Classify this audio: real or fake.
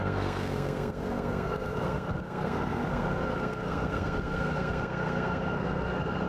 fake